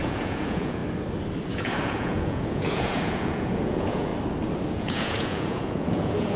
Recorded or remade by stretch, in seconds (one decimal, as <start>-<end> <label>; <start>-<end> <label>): 0.0-0.8 remade; 0.8-1.5 recorded; 1.5-4.1 remade; 4.1-4.7 recorded; 4.7-6.4 remade